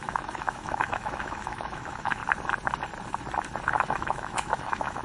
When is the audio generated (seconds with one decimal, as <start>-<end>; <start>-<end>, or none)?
0.0-2.2; 3.7-5.0